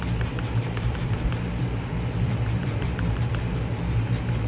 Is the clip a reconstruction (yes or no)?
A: yes